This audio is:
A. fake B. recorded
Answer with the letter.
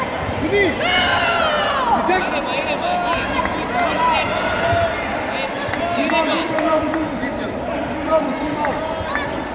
B